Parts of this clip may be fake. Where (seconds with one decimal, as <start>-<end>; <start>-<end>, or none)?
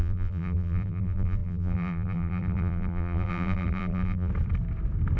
0.0-4.3